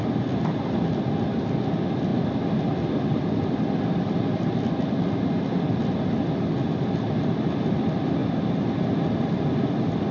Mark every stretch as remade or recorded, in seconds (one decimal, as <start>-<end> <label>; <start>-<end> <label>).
0.0-10.1 recorded